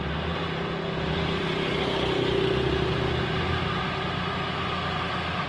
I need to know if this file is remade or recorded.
recorded